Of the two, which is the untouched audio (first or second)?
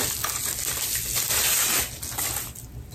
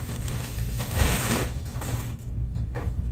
first